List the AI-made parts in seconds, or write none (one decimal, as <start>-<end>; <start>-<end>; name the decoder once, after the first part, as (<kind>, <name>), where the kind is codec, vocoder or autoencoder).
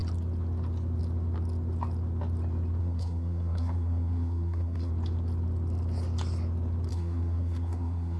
2.8-4.9 (codec, SNAC); 6.9-8.2